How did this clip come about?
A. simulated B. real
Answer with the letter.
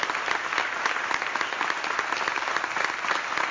B